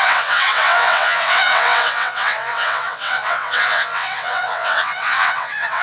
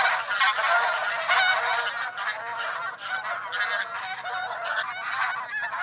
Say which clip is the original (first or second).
second